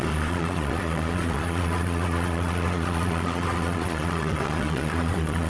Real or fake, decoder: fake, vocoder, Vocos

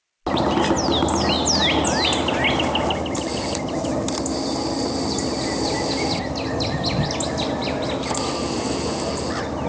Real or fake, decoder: real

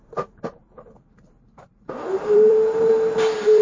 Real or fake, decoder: fake, vocoder, BigVGAN v2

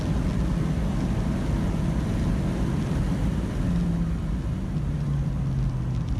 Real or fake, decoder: real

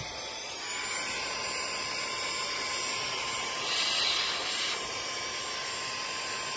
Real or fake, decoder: real